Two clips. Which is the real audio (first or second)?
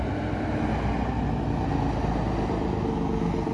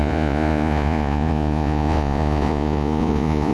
first